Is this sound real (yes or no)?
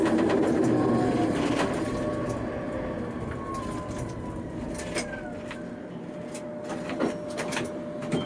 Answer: yes